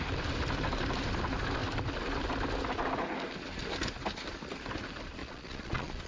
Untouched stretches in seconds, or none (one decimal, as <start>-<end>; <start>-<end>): 0.0-5.2